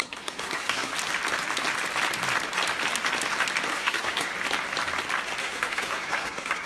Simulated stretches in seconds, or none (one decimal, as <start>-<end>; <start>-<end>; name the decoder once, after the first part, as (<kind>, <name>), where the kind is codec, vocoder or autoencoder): 0.0-0.9 (codec, SNAC); 3.7-4.3; 5.4-6.7